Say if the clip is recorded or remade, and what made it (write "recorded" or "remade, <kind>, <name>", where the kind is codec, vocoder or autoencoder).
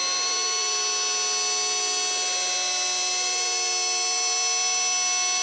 recorded